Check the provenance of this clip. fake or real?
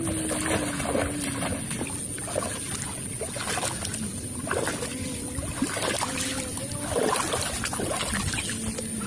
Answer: real